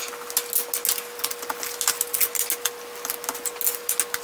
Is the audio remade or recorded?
recorded